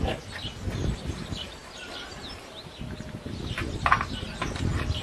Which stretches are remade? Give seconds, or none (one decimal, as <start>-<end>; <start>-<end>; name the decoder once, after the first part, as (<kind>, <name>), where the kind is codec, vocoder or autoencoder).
none